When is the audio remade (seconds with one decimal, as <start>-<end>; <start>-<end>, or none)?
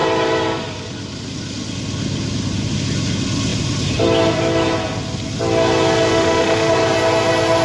6.1-6.7